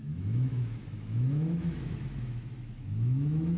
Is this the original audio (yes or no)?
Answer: no